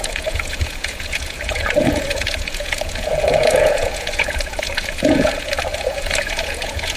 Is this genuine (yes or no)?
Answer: no